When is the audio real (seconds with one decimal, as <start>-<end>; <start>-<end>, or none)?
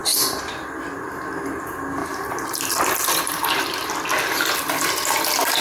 0.0-2.0; 3.9-5.6